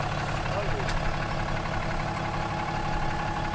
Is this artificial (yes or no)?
no